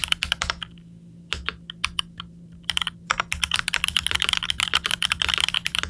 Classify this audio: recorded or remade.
recorded